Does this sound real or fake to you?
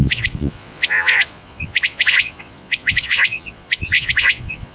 fake